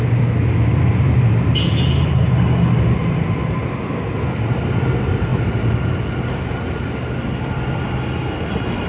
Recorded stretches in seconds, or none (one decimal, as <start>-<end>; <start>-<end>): 0.0-8.9

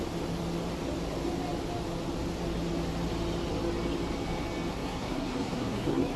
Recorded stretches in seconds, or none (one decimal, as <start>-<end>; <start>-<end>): 0.0-4.7

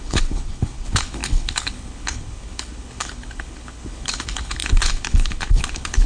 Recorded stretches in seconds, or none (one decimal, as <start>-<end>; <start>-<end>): none

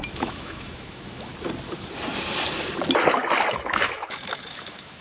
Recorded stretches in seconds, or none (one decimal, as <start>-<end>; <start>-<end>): 1.3-3.5

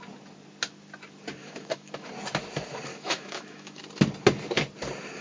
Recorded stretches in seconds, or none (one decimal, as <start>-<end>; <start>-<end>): 0.0-1.4; 2.1-2.9; 3.8-5.2

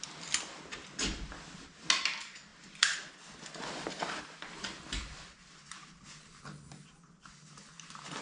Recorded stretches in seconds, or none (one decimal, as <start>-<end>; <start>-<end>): 0.0-8.2